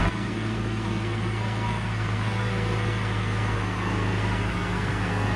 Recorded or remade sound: remade